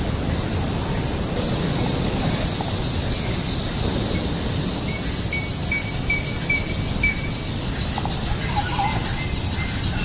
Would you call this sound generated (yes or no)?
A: no